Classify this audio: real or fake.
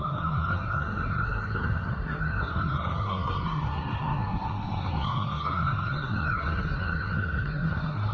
fake